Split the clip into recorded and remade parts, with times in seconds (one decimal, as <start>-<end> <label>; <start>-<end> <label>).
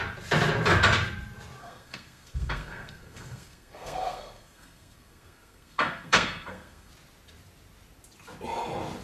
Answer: 0.0-1.6 recorded; 1.6-6.9 remade; 6.9-9.0 recorded